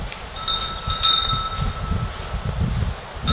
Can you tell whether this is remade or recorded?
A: recorded